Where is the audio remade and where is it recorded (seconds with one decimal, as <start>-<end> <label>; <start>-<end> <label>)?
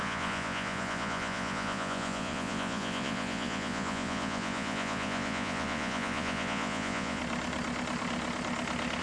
0.0-7.2 remade; 7.2-9.0 recorded